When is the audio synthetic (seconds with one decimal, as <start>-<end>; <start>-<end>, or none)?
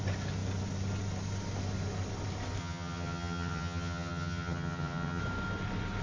2.6-5.2